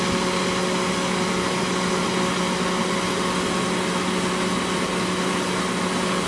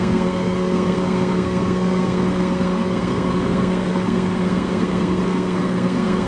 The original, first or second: first